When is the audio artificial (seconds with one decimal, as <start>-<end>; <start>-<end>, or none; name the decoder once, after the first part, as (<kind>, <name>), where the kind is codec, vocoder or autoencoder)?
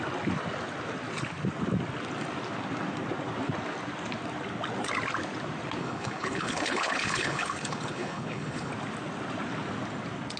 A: 5.8-8.7 (codec, HILCodec)